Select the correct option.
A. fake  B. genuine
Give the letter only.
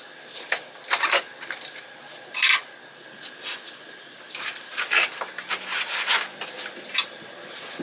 B